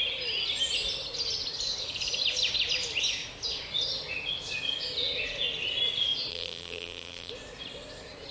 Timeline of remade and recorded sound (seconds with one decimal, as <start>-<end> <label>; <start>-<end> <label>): 0.0-6.3 recorded; 6.3-7.3 remade; 7.3-8.3 recorded

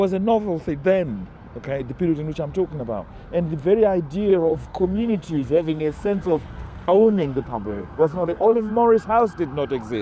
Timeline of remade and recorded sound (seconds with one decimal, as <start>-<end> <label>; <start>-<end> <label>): 0.0-4.3 recorded; 4.3-8.7 remade; 8.7-10.0 recorded

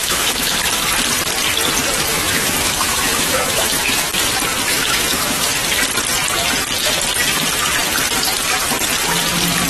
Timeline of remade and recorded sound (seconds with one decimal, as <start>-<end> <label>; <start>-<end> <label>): 0.0-0.5 remade; 0.5-2.1 recorded; 2.1-4.3 remade; 4.3-4.7 recorded; 4.7-5.5 remade; 5.5-9.7 recorded

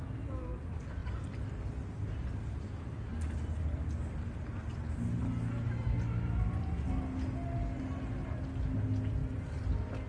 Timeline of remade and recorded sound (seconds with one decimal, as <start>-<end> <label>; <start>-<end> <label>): 0.0-10.1 recorded

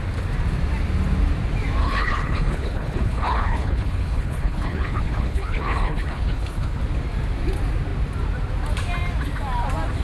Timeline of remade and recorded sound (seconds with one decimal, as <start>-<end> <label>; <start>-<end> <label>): 0.0-1.8 recorded; 1.8-6.8 remade; 6.8-10.0 recorded

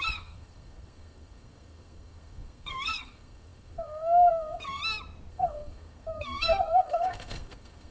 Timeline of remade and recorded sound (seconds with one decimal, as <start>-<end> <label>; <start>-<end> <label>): 0.0-4.8 remade; 4.8-5.3 recorded; 5.3-7.9 remade

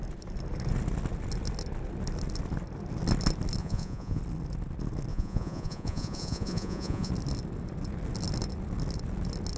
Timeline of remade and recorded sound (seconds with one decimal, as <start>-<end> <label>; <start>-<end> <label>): 0.0-3.6 recorded; 3.6-4.2 remade; 4.2-5.1 recorded; 5.1-7.1 remade; 7.1-9.6 recorded

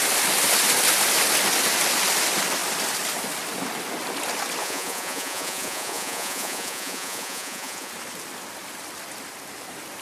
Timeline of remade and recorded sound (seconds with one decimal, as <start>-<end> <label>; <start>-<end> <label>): 0.0-4.6 recorded; 4.6-7.9 remade; 7.9-10.0 recorded